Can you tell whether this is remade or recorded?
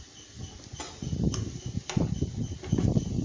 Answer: recorded